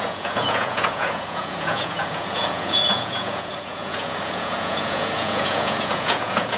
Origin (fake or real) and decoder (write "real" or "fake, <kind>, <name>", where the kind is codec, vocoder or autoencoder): fake, vocoder, Vocos